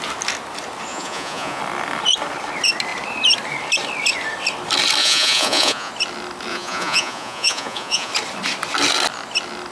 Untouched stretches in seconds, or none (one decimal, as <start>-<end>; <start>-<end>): 0.0-0.9; 1.6-5.0; 5.9-6.5; 8.1-9.7